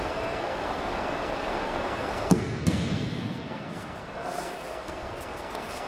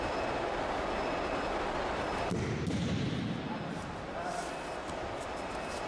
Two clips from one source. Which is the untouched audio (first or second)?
second